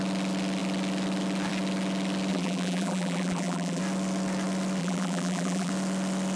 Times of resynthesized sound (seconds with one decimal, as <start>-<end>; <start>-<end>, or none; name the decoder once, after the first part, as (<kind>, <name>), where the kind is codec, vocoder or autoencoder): 2.3-3.8 (vocoder, BigVGAN v2); 4.8-5.7